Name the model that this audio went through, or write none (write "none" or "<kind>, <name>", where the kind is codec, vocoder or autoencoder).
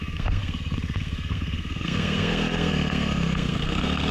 codec, SNAC